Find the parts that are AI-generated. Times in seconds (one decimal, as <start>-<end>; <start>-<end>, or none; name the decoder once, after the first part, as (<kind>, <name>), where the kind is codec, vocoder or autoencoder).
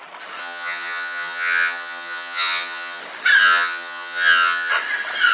0.4-3.0 (vocoder, HiFi-GAN); 3.4-4.7